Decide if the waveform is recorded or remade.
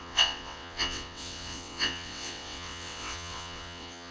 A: remade